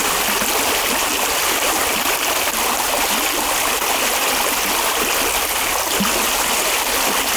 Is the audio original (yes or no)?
yes